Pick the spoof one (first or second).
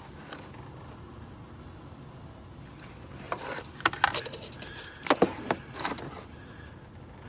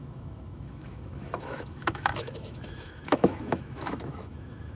second